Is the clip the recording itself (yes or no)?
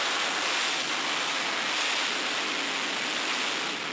yes